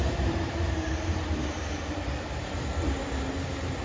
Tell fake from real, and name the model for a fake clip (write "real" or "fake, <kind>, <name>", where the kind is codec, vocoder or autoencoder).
real